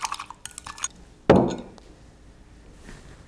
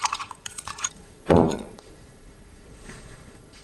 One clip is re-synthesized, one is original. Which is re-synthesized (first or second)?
second